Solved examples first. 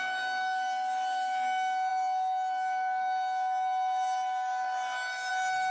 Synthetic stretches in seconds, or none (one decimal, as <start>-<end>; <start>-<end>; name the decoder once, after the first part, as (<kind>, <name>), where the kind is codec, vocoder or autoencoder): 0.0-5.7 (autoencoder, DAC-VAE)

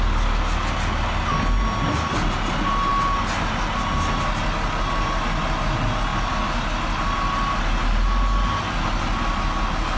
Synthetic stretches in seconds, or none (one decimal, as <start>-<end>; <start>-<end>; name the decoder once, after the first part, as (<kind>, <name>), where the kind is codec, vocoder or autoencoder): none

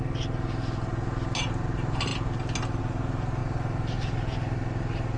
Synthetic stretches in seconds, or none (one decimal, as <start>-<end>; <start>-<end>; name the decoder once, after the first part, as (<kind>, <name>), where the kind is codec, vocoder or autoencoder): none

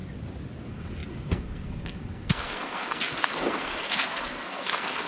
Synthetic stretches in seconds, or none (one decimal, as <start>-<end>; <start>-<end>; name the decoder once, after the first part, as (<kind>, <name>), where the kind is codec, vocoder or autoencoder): 0.6-5.1 (codec, SNAC)

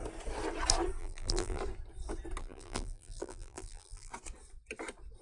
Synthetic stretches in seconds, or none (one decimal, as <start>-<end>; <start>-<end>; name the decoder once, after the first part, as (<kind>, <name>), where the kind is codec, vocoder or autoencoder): 1.0-1.6 (vocoder, BigVGAN v2); 2.4-4.1